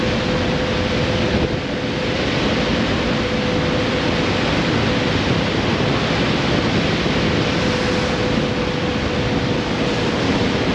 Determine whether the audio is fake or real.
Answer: real